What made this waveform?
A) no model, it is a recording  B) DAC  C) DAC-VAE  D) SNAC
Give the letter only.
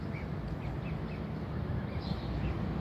A